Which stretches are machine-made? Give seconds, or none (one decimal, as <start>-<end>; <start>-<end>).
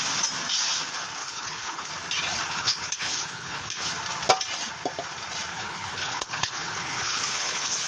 1.2-1.9; 2.5-3.9; 5.5-7.9